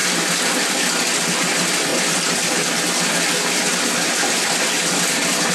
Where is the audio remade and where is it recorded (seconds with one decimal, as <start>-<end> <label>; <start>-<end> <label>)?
0.0-5.5 remade